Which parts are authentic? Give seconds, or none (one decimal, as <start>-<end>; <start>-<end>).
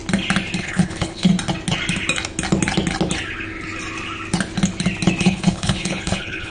0.0-0.6; 1.3-5.2